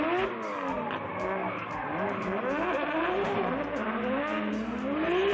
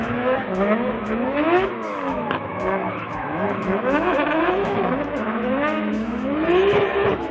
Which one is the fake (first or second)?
second